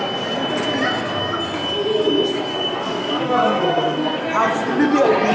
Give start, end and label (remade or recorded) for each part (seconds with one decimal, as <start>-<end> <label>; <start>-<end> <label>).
0.0-2.5 recorded; 2.5-4.2 remade; 4.2-5.3 recorded